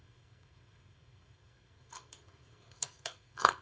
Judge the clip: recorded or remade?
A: remade